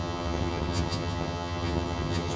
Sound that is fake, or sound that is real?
fake